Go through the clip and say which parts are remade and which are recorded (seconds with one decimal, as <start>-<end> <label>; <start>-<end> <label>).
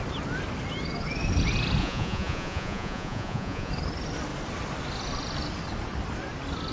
0.0-1.8 recorded; 1.8-3.7 remade; 3.7-6.7 recorded